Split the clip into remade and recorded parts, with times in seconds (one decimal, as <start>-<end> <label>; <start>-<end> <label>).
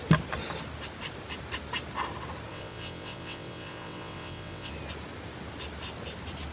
0.0-2.5 recorded; 2.5-4.7 remade; 4.7-6.5 recorded